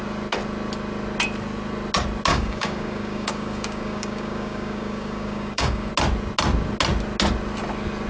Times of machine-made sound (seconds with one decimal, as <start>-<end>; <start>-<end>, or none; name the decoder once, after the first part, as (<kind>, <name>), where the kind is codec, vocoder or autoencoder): 2.3-5.9 (codec, DAC)